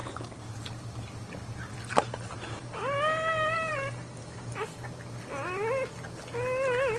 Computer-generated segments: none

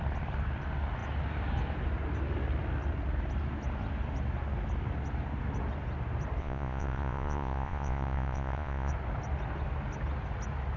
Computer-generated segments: 6.4-8.9 (vocoder, Vocos)

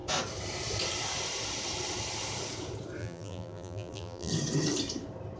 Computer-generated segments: 3.0-4.3 (vocoder, BigVGAN v2)

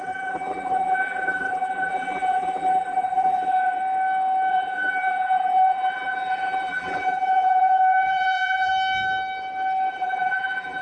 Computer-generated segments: 0.0-3.8 (vocoder, BigVGAN v2); 4.5-8.7; 9.9-10.8

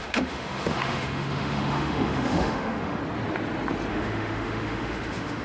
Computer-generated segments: 0.0-3.0 (autoencoder, DAC-VAE); 3.9-5.4